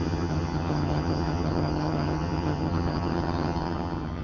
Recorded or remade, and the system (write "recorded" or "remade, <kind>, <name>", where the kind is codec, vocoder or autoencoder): remade, vocoder, HiFi-GAN